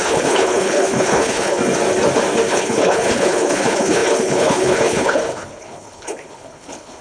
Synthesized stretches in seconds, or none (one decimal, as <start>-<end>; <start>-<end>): 0.0-1.6; 2.5-7.0